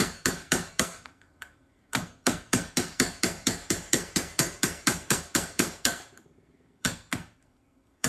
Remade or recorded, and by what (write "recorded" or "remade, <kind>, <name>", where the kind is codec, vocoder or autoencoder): remade, codec, SNAC